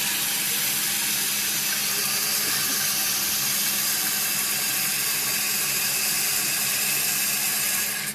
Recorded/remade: recorded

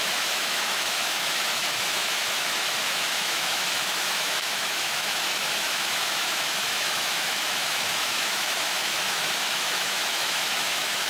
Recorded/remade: remade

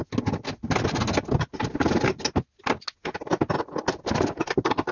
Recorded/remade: recorded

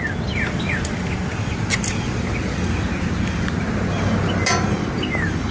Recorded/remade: recorded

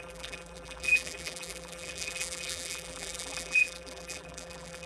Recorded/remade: remade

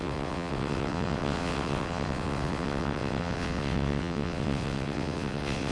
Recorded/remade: remade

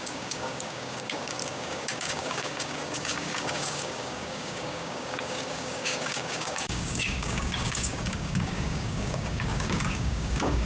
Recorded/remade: remade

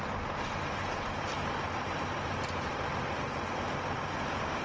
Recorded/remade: remade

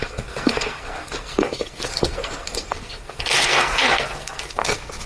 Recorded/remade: remade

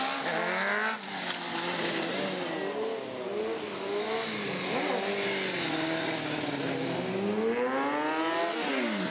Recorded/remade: recorded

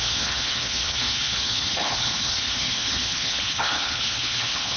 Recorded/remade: remade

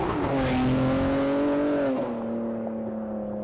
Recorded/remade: recorded